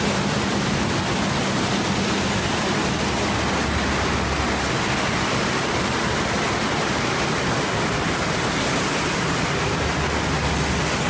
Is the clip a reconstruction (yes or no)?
no